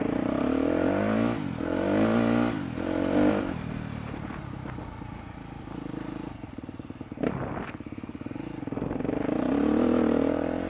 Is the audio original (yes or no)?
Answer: yes